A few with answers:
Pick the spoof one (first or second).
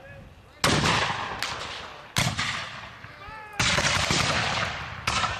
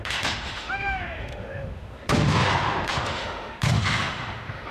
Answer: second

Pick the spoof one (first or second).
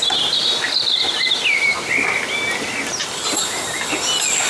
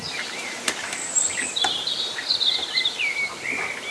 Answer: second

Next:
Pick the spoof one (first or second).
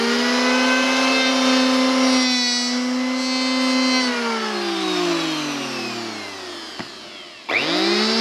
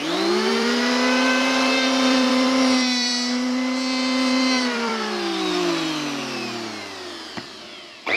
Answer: second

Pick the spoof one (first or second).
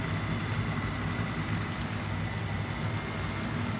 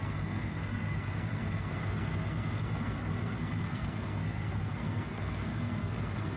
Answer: second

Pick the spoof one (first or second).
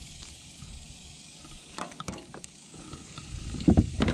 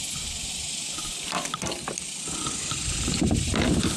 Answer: first